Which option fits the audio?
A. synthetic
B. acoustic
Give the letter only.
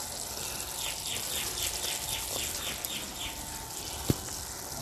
B